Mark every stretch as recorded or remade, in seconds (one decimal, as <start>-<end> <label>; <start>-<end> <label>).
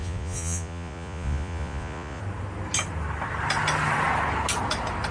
0.0-2.2 remade; 2.2-5.1 recorded